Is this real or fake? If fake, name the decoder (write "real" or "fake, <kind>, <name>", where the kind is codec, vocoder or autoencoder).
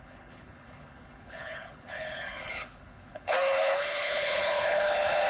fake, codec, HILCodec